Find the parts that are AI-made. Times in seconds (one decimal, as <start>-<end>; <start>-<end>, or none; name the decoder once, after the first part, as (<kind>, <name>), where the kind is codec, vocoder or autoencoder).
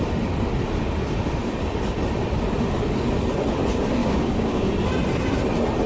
4.0-4.7 (codec, DAC)